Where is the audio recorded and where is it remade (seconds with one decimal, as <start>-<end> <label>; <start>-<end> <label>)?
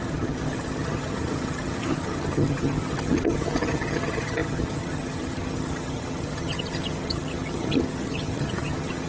0.0-9.1 remade